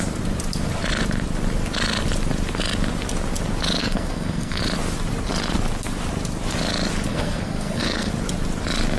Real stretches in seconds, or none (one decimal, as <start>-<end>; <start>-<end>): 0.0-3.8; 4.6-7.1; 8.1-9.0

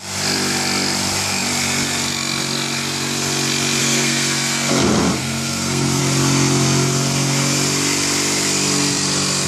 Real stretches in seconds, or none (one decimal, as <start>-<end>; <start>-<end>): 0.0-3.8; 4.7-5.2; 6.0-9.5

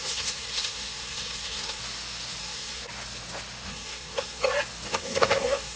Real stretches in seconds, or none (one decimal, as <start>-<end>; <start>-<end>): 1.8-2.4; 2.8-3.7; 4.4-4.9

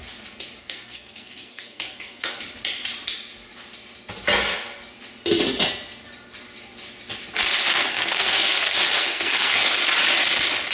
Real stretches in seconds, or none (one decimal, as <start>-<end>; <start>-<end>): 0.0-0.6; 2.4-7.7; 9.7-10.7